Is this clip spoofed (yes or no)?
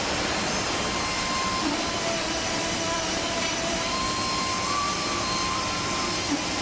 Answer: yes